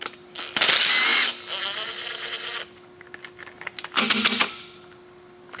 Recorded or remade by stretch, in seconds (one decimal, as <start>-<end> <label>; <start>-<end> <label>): 0.0-5.6 recorded

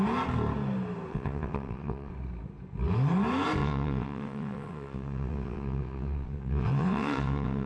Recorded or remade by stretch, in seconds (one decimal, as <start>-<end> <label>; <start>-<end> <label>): 0.0-1.1 recorded; 1.1-2.1 remade; 2.1-3.6 recorded; 3.6-7.7 remade

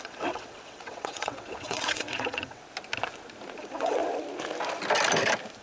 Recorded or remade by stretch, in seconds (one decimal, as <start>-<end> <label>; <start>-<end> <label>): 0.0-2.6 remade; 2.6-3.6 recorded; 3.6-4.0 remade; 4.0-5.6 recorded

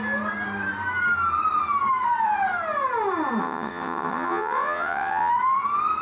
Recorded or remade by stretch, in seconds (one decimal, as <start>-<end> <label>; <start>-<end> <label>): 0.0-3.4 recorded; 3.4-5.3 remade; 5.3-6.0 recorded

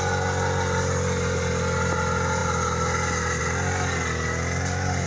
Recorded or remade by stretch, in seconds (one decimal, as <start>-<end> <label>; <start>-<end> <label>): 0.0-5.1 recorded

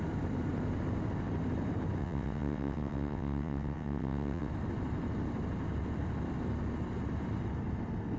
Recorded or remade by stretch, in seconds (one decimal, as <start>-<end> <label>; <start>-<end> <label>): 0.0-2.0 recorded; 2.0-4.5 remade; 4.5-8.2 recorded